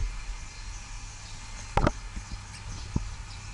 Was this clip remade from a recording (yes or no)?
no